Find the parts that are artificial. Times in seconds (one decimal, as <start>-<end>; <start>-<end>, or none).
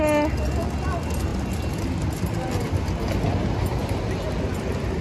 none